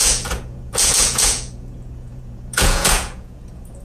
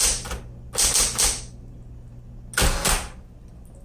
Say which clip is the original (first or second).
second